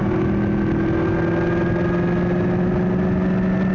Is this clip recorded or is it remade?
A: recorded